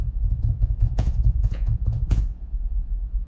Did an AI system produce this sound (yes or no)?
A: yes